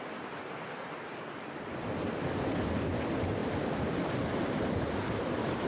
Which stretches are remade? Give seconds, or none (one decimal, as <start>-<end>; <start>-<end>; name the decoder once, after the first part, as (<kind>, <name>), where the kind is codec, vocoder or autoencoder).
none